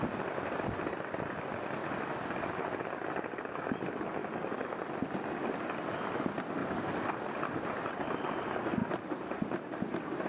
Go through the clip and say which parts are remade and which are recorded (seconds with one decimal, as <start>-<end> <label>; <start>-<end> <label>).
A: 0.0-10.3 recorded